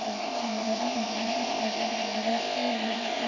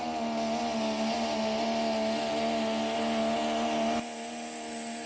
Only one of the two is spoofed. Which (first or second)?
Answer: first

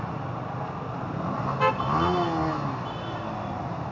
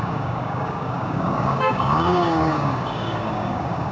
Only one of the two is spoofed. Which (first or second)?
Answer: second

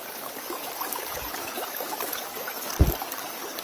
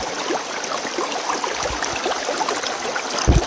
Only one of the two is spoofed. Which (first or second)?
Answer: first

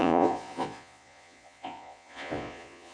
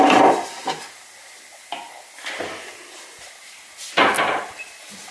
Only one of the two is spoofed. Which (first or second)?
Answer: first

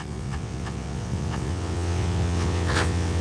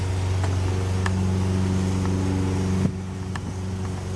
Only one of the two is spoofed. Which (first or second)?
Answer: first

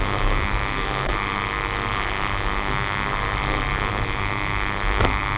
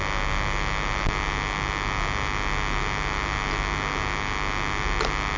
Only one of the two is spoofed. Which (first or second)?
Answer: first